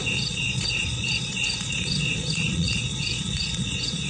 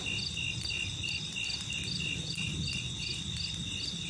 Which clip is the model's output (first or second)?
first